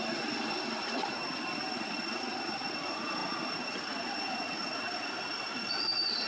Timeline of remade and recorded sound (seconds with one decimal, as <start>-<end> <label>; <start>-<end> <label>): 0.0-6.3 recorded